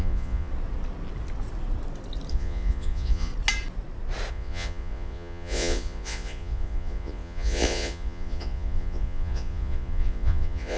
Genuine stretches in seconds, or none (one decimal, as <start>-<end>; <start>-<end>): 0.5-2.3; 3.3-4.3